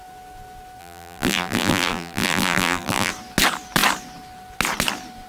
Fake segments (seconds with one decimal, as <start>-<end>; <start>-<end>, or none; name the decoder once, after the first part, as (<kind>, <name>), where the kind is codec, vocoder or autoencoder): 0.8-3.1 (vocoder, BigVGAN v2)